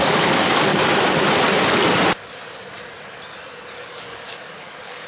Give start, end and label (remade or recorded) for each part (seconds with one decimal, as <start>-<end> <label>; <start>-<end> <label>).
0.0-0.7 remade; 0.7-3.7 recorded; 3.7-5.1 remade